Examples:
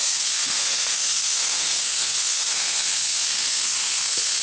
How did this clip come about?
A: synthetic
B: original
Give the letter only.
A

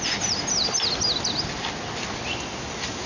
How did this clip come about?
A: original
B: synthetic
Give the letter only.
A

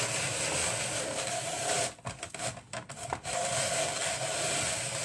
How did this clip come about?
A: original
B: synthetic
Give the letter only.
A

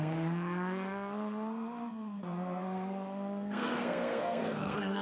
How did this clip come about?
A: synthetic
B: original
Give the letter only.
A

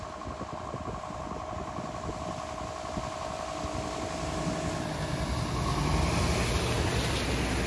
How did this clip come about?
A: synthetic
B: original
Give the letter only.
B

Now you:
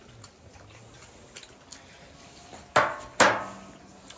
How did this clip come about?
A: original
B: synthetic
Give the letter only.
A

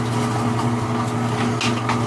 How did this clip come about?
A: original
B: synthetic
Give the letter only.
A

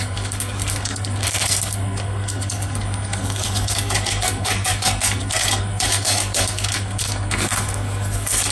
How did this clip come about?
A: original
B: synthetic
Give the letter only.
B